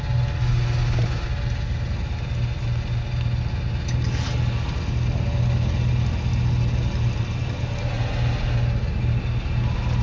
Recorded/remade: recorded